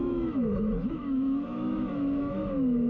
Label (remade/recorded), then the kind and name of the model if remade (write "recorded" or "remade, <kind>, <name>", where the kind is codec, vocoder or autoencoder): remade, autoencoder, DAC-VAE